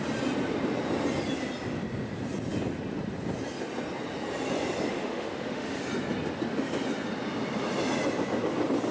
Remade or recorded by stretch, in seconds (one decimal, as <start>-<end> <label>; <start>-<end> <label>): 0.0-4.9 recorded; 4.9-5.8 remade; 5.8-8.9 recorded